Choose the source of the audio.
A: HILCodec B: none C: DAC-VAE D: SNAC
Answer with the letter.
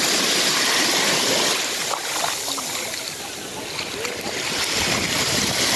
B